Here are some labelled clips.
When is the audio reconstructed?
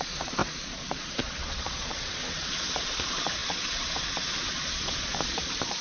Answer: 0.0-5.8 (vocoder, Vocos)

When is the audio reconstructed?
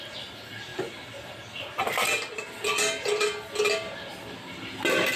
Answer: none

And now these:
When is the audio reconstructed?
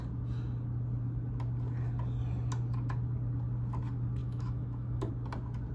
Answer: 4.2-5.1 (autoencoder, DAC-VAE)